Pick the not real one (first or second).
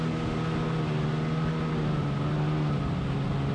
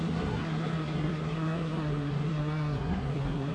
second